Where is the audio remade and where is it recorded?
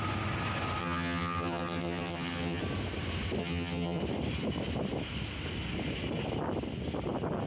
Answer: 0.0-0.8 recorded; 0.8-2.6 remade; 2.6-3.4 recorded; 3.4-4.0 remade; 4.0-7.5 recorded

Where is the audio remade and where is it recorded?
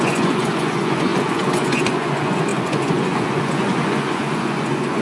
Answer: 0.0-5.0 remade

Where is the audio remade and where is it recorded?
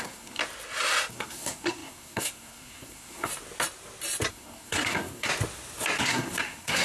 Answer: 0.0-0.4 remade; 0.4-1.1 recorded; 1.1-3.3 remade; 3.3-4.3 recorded; 4.3-5.3 remade; 5.3-6.0 recorded; 6.0-6.8 remade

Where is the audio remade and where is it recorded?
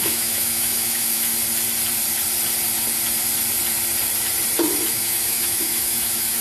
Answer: 0.0-1.3 remade; 1.3-4.9 recorded; 4.9-6.4 remade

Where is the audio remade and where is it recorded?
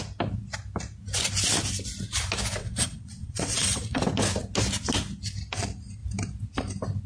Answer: 0.0-2.6 recorded; 2.6-4.0 remade; 4.0-7.1 recorded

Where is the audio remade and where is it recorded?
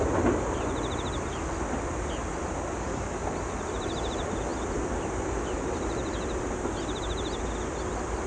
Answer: 0.0-8.3 recorded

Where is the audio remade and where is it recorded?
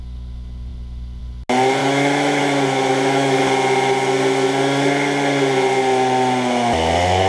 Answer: 0.0-1.8 recorded; 1.8-2.4 remade; 2.4-2.9 recorded; 2.9-3.4 remade; 3.4-7.3 recorded